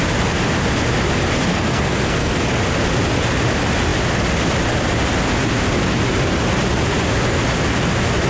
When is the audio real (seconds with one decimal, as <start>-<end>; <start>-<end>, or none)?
0.0-1.5; 2.5-8.3